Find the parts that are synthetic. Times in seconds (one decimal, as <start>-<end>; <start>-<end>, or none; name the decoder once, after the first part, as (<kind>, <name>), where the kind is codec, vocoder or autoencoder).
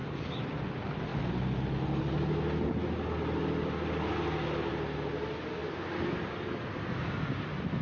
none